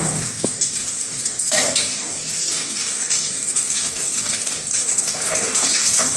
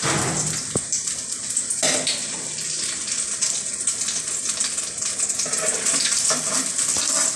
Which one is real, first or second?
second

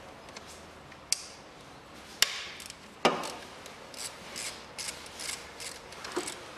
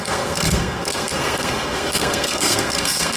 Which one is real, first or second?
first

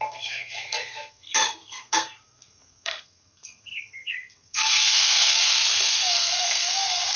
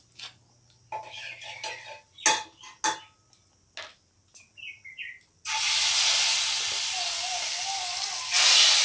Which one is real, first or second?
second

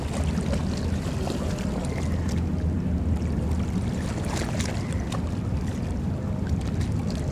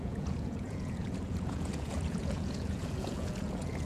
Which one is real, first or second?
first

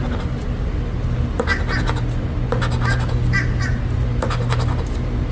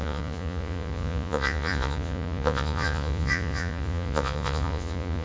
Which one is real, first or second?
first